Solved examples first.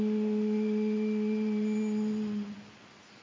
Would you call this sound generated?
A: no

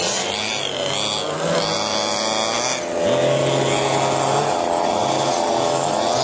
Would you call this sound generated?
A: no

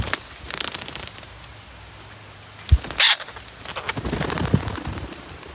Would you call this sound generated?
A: no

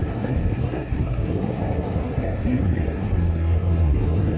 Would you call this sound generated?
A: yes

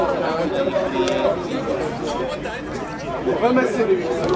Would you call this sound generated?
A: no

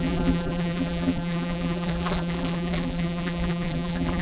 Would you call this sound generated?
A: yes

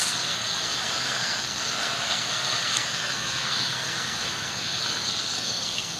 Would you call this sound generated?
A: yes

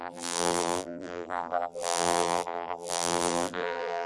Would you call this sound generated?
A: yes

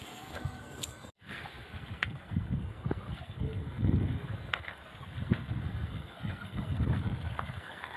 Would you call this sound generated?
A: yes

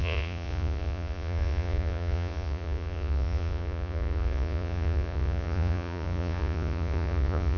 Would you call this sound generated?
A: yes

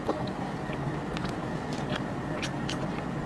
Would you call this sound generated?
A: no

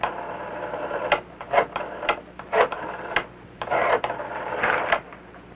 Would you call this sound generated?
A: yes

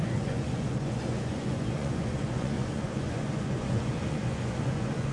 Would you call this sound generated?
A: yes